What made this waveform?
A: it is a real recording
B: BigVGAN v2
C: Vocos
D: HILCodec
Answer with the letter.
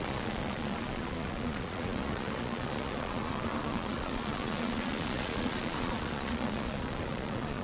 C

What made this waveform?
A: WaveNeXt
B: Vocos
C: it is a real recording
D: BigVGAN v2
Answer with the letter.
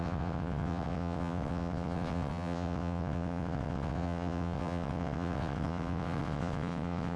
A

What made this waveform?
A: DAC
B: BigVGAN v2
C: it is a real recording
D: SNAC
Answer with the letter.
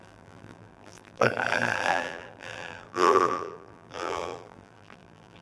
B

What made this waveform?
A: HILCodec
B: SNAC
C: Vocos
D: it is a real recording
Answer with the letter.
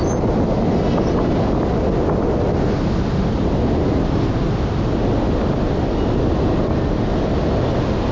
D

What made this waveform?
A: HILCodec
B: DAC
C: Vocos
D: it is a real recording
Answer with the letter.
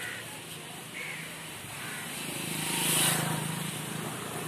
D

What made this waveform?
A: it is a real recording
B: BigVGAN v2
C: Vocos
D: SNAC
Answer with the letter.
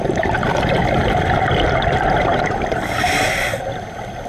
A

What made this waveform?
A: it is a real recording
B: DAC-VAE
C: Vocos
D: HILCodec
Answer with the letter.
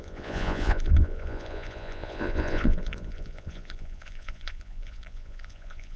C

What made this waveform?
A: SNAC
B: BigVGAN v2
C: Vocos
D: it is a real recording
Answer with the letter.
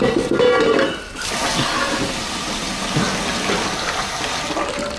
D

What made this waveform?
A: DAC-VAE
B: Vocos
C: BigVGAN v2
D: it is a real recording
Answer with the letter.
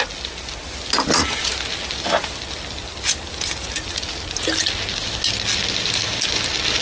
D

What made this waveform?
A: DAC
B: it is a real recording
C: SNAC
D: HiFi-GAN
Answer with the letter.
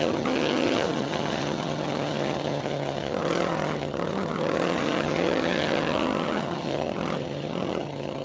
D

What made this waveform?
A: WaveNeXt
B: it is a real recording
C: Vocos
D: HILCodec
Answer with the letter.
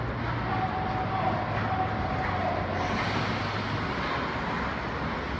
B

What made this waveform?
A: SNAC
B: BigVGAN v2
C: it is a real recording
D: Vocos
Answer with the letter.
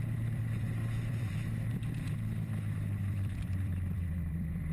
B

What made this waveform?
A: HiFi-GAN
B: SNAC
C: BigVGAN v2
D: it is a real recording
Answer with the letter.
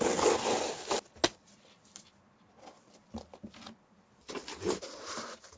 D